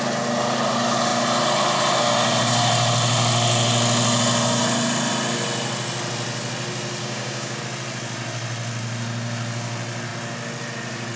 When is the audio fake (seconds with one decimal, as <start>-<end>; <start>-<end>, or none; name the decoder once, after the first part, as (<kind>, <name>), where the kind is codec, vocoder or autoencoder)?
7.0-7.6 (codec, DAC)